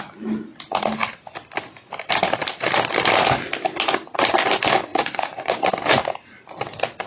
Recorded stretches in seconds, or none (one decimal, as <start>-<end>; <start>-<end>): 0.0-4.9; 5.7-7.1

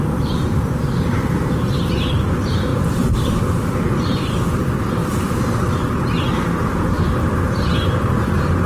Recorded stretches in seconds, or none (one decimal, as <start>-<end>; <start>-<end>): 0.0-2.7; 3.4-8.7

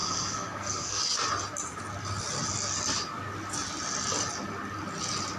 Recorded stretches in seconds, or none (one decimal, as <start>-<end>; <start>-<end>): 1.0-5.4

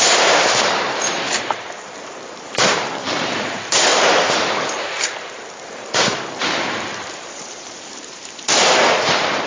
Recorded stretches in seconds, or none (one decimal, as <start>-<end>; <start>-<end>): none

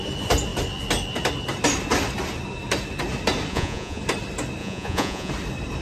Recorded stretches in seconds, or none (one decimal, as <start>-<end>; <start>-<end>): 0.0-3.5; 4.0-4.6; 5.3-5.8